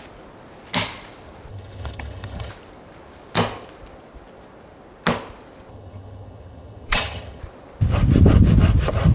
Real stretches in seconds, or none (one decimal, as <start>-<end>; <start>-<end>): 0.0-1.5; 2.5-5.7; 7.4-9.1